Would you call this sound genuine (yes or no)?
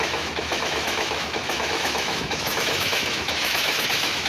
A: no